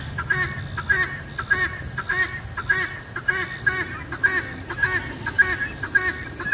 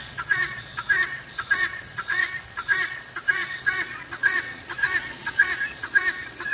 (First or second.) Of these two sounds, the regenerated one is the second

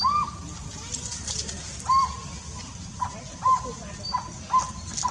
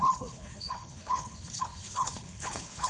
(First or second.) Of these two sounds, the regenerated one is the second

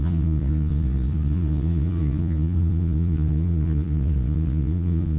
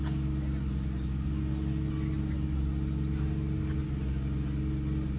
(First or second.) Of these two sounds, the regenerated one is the first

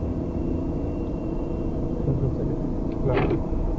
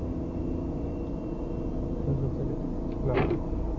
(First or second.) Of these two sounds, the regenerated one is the first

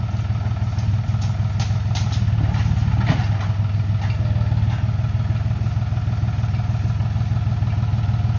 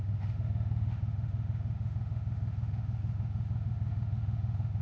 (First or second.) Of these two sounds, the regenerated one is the second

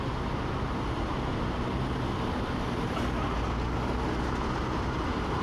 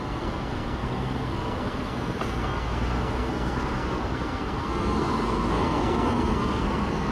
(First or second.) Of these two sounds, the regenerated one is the second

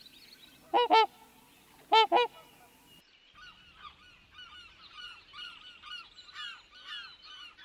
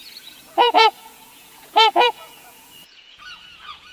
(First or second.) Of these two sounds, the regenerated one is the second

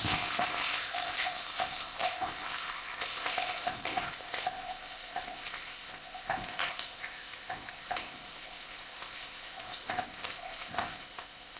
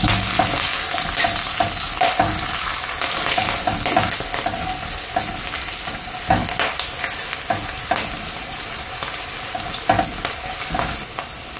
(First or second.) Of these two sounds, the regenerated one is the first